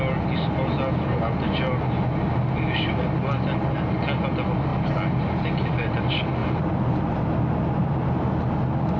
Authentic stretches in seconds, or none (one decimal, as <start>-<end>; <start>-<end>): 0.0-6.4; 7.2-9.0